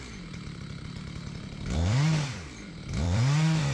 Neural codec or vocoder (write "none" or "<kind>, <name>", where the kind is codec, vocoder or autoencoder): vocoder, BigVGAN v2